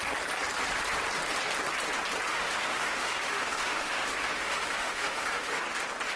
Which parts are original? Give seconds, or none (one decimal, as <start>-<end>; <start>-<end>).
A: 0.0-2.3; 5.6-6.2